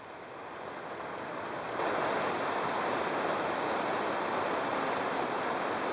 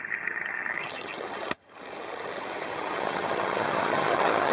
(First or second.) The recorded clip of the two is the first